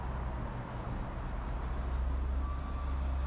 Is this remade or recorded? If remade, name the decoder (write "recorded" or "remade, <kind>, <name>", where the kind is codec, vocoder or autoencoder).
recorded